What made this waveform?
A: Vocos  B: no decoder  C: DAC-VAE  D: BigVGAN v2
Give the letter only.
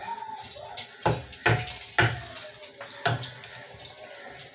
B